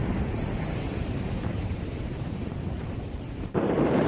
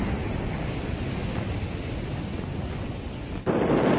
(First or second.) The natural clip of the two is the second